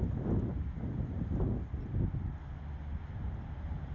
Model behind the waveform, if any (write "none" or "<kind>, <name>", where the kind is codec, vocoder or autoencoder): none